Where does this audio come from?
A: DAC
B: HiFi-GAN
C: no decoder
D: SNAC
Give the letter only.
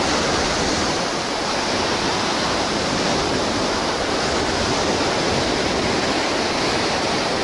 C